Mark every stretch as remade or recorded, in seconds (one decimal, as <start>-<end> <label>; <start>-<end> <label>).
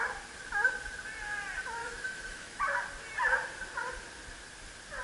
0.0-1.8 recorded; 1.8-2.6 remade; 2.6-5.0 recorded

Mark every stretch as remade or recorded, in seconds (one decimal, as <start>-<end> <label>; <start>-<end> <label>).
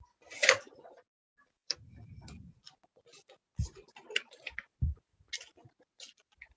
0.0-6.6 recorded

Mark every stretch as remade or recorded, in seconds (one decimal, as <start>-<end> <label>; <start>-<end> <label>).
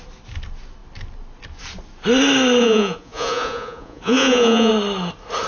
0.0-2.6 recorded; 2.6-4.7 remade; 4.7-5.5 recorded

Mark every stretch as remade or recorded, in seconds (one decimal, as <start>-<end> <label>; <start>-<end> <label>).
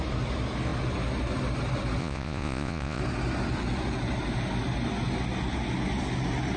0.0-2.0 recorded; 2.0-3.0 remade; 3.0-6.6 recorded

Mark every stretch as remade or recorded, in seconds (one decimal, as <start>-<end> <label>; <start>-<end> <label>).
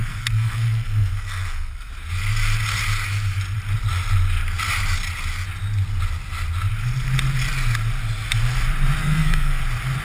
0.0-1.9 remade; 1.9-9.0 recorded; 9.0-9.6 remade; 9.6-10.0 recorded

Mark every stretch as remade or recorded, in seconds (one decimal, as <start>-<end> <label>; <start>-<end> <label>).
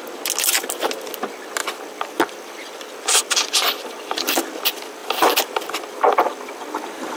0.0-1.6 recorded; 1.6-4.5 remade; 4.5-5.0 recorded; 5.0-6.8 remade; 6.8-7.2 recorded